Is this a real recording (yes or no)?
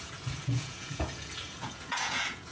no